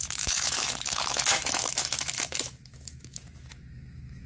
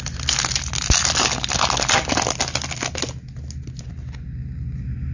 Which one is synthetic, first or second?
first